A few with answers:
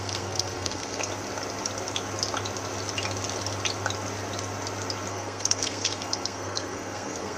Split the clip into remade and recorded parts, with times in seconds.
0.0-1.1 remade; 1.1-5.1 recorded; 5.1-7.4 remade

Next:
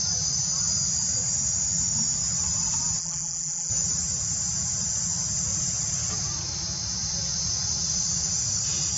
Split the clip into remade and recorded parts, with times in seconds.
0.0-3.0 recorded; 3.0-3.7 remade; 3.7-9.0 recorded